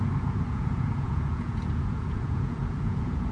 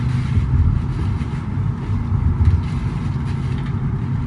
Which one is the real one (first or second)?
second